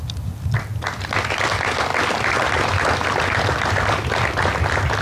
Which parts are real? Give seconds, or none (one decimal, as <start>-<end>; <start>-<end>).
0.0-5.0